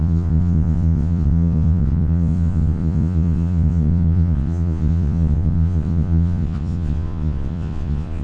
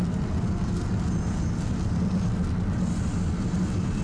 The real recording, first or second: second